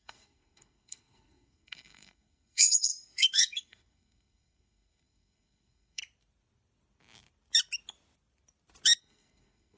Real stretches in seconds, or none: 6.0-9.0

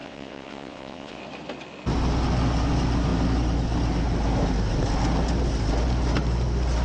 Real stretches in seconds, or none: 1.2-6.8

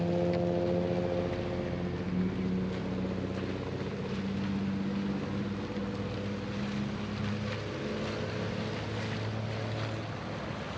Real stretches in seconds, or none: 0.0-10.8

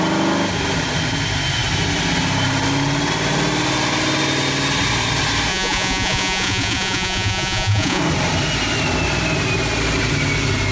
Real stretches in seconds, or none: 0.0-5.5; 8.0-10.7